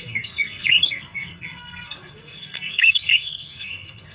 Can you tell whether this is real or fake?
fake